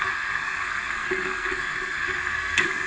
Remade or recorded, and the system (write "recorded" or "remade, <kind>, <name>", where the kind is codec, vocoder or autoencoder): remade, codec, SNAC